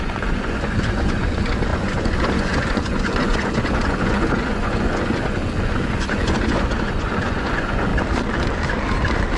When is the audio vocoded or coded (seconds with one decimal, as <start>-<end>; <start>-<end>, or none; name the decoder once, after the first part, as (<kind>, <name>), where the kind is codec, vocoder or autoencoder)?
0.0-7.9 (vocoder, Vocos)